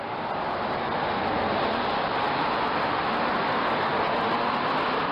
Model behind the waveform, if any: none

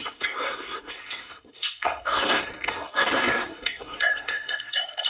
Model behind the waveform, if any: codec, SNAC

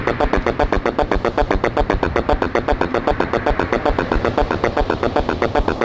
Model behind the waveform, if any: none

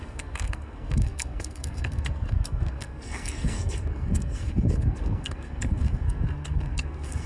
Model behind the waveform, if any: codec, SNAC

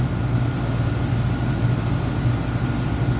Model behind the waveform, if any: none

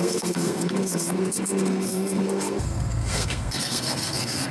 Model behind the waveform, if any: codec, SNAC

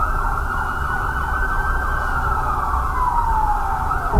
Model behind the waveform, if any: none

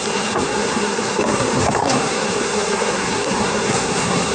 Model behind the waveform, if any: codec, SNAC